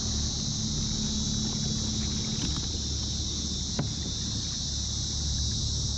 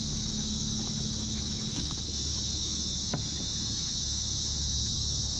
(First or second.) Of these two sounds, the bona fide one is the first